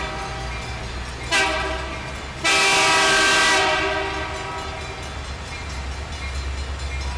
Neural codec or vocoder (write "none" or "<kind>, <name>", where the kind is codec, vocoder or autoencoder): none